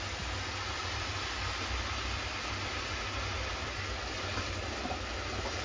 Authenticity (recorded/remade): recorded